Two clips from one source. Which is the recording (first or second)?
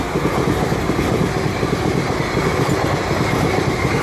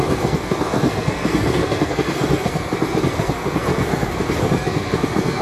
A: first